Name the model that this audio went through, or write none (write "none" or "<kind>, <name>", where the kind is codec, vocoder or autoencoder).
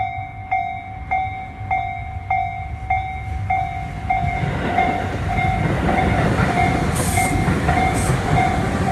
none